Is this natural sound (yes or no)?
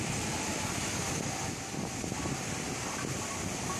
yes